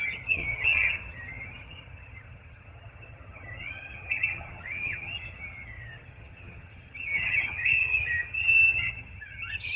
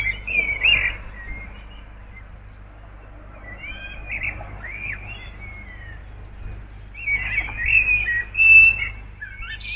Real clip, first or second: second